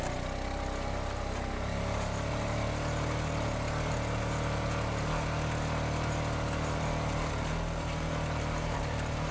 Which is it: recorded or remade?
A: recorded